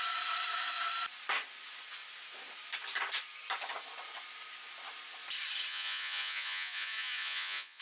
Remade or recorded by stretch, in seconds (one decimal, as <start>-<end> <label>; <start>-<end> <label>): 0.0-5.7 recorded; 5.7-7.8 remade